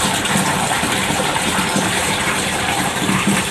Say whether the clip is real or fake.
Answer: fake